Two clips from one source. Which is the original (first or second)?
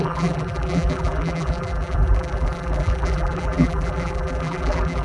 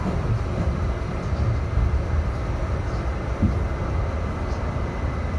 second